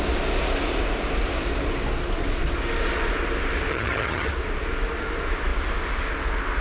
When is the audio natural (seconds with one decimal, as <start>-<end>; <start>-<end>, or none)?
0.0-3.7; 4.3-6.6

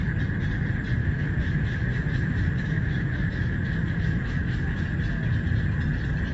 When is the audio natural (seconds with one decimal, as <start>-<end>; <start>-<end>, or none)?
0.0-1.0; 4.8-6.3

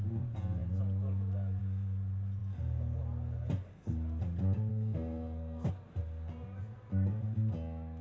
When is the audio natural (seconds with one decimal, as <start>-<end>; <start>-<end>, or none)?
0.0-4.7; 5.7-8.0

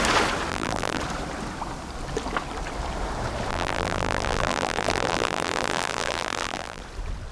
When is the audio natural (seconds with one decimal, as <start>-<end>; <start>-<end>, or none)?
0.0-0.5; 1.0-3.5; 6.8-7.3